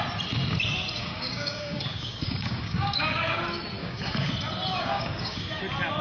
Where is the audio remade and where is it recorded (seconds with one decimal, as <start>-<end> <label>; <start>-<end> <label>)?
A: 0.0-1.0 recorded; 1.0-3.4 remade; 3.4-3.8 recorded; 3.8-4.3 remade; 4.3-4.7 recorded; 4.7-5.6 remade; 5.6-6.0 recorded